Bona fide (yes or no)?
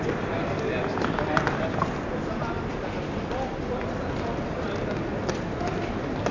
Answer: yes